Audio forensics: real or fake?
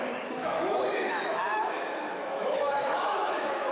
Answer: fake